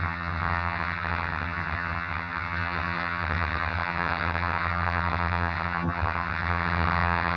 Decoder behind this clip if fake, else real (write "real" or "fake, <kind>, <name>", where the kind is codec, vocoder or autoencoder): fake, vocoder, HiFi-GAN